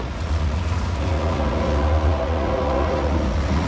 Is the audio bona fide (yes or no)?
no